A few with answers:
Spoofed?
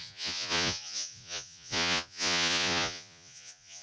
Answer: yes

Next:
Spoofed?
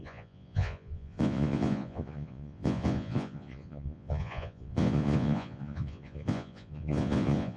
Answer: yes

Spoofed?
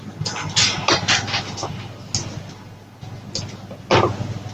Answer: no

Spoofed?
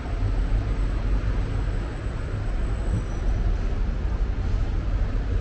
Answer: no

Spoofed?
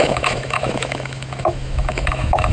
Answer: yes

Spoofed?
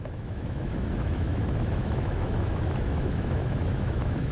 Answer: yes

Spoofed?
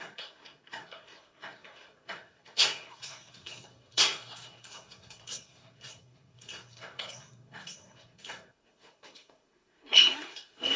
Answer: yes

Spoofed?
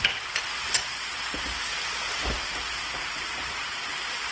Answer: yes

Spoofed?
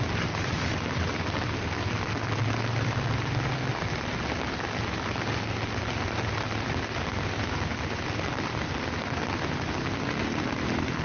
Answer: no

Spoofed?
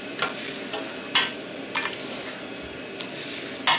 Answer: no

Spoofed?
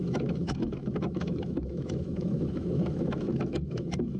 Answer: yes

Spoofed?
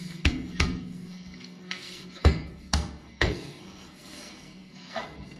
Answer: yes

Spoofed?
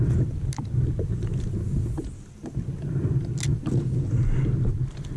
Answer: no